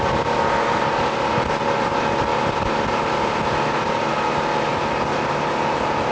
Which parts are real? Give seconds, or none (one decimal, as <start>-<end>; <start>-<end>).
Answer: 0.0-6.1